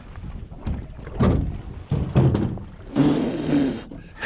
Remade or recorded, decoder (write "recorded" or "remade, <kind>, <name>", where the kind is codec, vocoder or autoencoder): recorded